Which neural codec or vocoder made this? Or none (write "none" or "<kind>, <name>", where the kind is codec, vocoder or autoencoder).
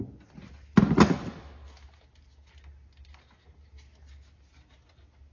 none